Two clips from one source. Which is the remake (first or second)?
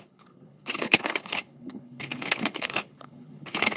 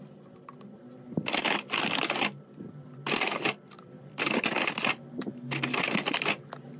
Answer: first